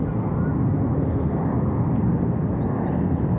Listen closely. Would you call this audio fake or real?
real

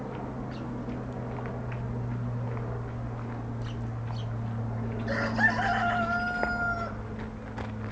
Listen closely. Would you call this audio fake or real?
real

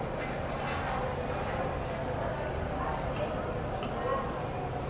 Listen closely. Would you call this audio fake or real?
real